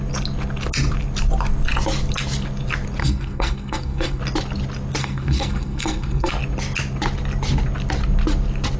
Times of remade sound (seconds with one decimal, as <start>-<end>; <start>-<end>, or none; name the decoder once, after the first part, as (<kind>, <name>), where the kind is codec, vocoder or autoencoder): 3.0-4.2 (codec, SNAC); 5.0-6.3